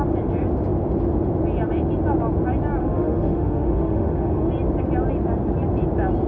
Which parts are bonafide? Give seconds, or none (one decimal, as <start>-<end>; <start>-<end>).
0.0-2.8; 4.5-6.3